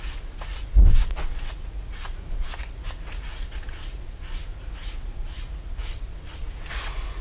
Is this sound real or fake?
fake